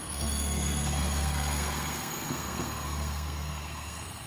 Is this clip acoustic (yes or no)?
no